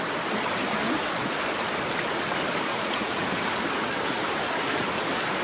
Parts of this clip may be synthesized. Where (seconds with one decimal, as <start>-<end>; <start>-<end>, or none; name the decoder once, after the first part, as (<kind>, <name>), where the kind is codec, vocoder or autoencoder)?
2.7-3.4 (vocoder, Vocos)